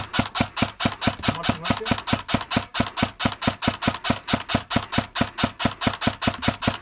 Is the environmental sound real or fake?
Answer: real